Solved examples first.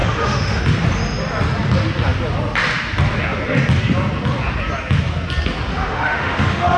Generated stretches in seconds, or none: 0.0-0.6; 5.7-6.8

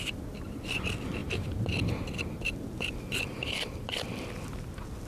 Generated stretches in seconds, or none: 1.2-4.3

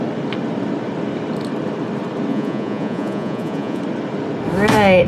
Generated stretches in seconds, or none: 2.3-3.8